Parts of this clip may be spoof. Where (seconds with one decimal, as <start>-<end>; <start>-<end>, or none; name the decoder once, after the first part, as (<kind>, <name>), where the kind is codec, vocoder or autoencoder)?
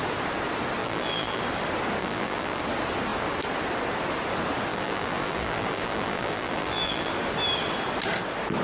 0.8-1.4 (vocoder, BigVGAN v2); 2.0-2.6; 4.7-7.1